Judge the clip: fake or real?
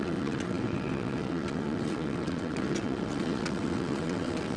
fake